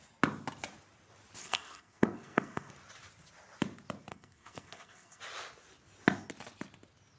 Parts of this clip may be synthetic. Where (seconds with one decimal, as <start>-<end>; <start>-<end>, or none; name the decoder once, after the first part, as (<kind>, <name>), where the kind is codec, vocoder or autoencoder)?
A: 1.4-2.7 (codec, SNAC); 4.1-5.2